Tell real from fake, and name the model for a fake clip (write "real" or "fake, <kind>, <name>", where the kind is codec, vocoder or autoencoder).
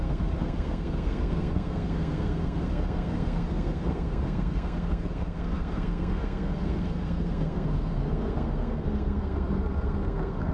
fake, codec, SNAC